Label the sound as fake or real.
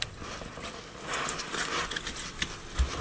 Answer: real